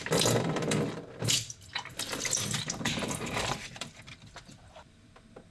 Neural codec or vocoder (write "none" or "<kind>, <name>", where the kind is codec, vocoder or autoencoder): vocoder, BigVGAN v2